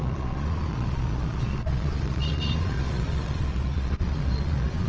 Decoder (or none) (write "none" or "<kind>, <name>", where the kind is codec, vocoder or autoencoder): vocoder, Vocos